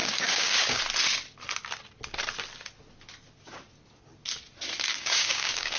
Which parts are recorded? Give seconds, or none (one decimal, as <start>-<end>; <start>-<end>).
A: 0.8-4.9